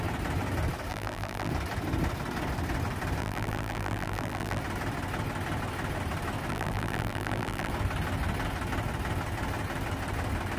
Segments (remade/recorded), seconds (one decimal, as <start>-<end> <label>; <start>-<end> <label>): 0.0-0.9 recorded; 0.9-1.5 remade; 1.5-3.2 recorded; 3.2-4.6 remade; 4.6-6.5 recorded; 6.5-7.7 remade; 7.7-10.6 recorded